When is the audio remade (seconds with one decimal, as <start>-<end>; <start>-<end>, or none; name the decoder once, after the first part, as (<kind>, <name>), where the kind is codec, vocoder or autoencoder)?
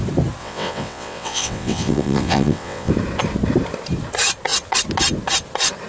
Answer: 0.4-2.9 (vocoder, WaveNeXt)